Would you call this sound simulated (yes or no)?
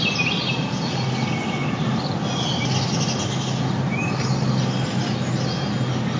no